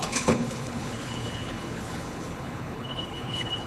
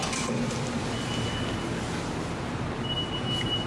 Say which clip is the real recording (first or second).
second